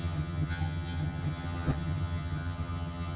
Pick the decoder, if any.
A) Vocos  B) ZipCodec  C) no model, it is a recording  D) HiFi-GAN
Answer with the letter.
D